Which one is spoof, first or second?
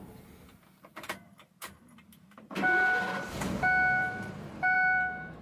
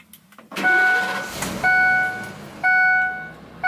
first